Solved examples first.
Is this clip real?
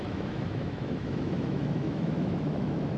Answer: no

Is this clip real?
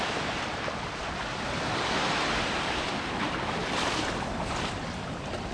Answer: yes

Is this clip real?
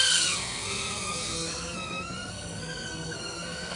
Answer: no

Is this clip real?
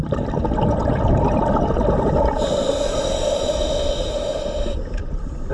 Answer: yes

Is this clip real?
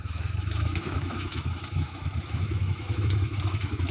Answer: no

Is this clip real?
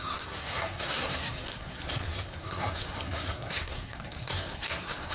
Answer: no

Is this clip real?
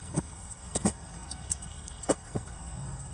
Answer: no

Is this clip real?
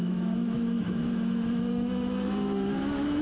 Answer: no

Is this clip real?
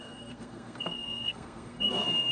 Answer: no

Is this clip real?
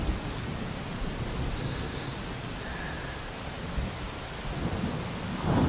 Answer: yes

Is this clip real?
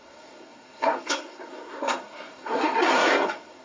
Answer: no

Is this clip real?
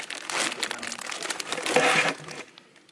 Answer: yes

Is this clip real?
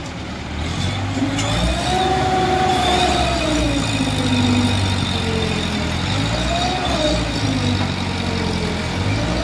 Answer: yes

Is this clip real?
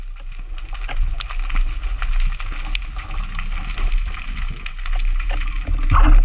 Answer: yes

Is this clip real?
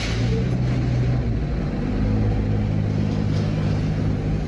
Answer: yes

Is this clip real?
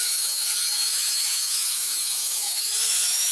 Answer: no